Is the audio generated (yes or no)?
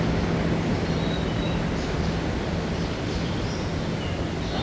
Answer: no